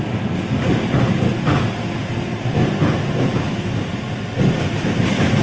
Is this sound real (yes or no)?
yes